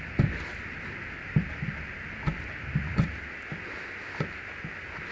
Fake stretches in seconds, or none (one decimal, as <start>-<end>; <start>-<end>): none